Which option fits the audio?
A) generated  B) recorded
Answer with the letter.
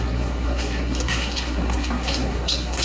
A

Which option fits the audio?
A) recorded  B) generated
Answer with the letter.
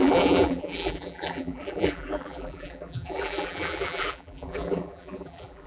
B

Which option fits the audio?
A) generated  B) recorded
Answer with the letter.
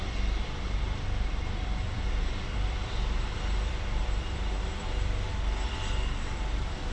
A